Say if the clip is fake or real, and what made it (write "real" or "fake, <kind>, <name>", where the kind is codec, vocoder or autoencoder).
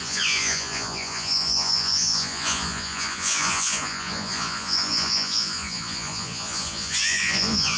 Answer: fake, vocoder, Vocos